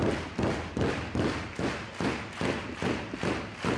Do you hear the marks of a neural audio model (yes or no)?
no